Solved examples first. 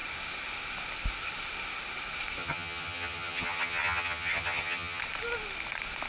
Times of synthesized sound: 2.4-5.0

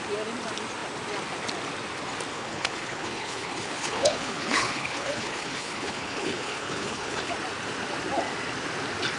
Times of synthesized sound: 2.3-7.3

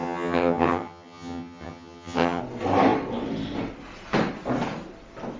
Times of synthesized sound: 0.0-2.4